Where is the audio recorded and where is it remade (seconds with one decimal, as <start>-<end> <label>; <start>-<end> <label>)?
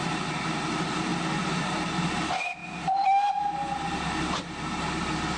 0.0-5.4 recorded